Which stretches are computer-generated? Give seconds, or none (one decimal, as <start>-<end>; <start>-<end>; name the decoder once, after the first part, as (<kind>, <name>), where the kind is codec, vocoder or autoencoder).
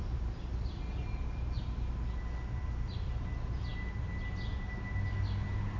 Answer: 0.0-1.6 (vocoder, BigVGAN v2)